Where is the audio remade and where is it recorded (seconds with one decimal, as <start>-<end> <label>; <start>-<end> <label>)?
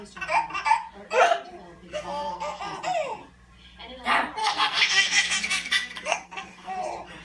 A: 0.0-1.9 recorded; 1.9-2.6 remade; 2.6-4.4 recorded; 4.4-6.7 remade; 6.7-7.2 recorded